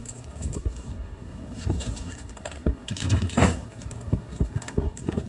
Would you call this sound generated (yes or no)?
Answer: yes